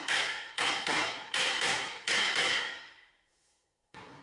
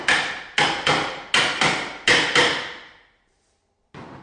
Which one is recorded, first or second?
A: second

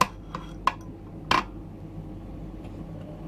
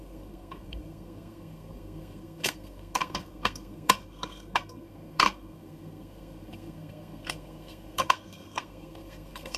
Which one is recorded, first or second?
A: first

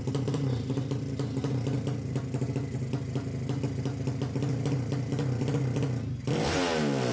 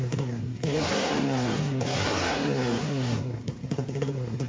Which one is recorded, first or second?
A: first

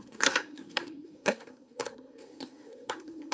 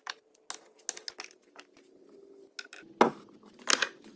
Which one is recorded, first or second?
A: second